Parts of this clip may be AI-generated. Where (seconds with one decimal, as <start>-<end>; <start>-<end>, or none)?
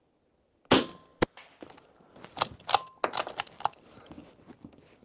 none